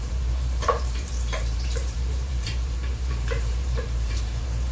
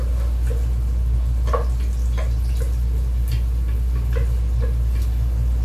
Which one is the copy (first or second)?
first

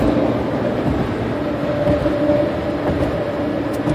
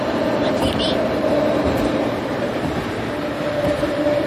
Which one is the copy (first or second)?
second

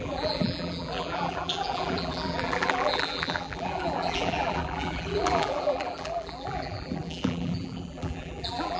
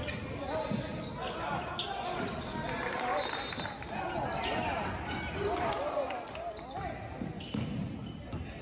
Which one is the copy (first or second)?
first